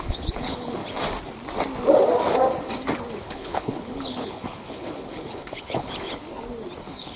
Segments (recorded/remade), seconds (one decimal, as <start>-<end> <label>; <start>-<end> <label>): 0.0-0.8 remade; 0.8-3.2 recorded; 3.2-6.2 remade; 6.2-6.8 recorded; 6.8-7.2 remade